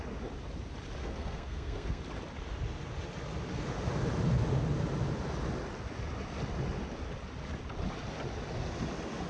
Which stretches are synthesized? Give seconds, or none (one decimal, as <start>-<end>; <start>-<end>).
1.0-2.0

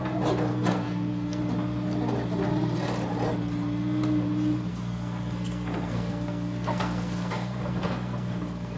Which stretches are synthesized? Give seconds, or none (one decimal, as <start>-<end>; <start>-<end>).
0.5-1.4; 4.7-8.8

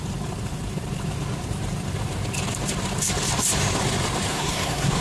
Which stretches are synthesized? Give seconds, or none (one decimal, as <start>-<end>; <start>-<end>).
4.3-5.0

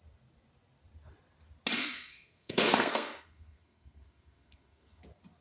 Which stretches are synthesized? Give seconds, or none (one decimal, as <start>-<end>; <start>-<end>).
1.8-5.0

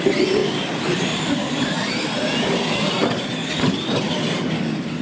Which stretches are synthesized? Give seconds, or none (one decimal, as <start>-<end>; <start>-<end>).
none

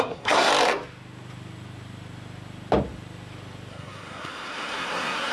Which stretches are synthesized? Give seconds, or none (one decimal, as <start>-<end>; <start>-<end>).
0.0-0.5; 3.7-5.3

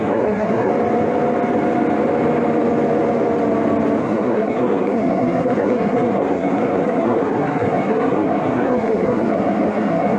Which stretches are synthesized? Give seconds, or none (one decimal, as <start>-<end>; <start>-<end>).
0.0-0.7; 4.0-10.2